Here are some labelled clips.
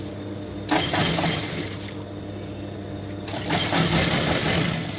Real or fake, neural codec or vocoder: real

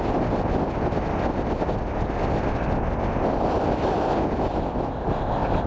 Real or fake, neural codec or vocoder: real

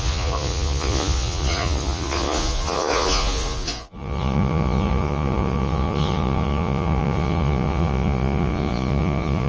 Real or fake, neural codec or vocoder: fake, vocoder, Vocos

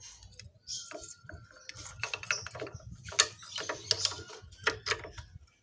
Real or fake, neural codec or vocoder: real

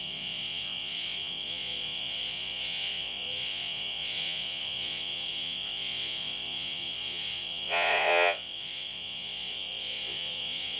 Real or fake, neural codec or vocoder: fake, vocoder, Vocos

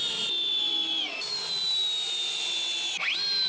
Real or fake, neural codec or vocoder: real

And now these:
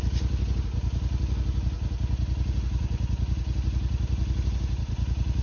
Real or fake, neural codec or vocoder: real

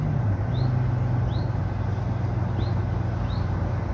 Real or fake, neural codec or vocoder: real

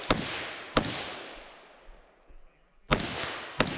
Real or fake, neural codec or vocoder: real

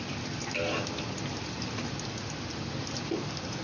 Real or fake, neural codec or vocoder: real